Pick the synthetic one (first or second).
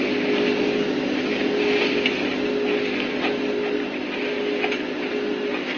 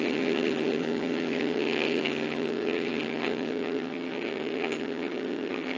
second